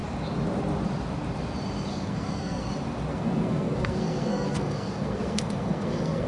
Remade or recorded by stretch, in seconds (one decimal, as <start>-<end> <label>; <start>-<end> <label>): 0.0-1.9 recorded; 1.9-2.7 remade; 2.7-3.1 recorded; 3.1-6.3 remade